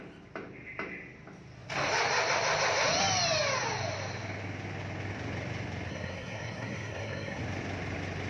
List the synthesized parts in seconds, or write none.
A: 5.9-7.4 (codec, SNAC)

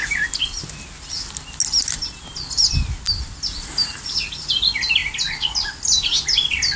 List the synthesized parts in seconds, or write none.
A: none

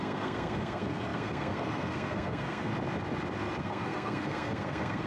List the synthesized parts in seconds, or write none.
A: 0.0-2.7 (codec, SNAC); 3.6-5.1